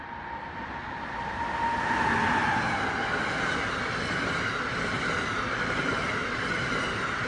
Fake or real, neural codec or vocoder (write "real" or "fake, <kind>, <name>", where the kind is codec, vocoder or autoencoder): real